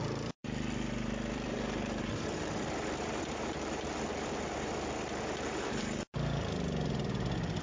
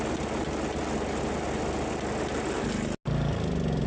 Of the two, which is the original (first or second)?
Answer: second